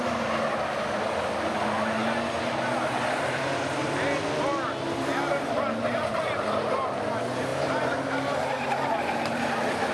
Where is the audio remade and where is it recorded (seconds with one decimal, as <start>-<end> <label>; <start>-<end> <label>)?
0.0-9.9 recorded